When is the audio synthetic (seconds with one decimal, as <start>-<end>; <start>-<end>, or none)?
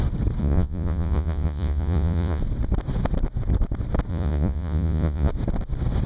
0.4-2.4; 4.1-5.3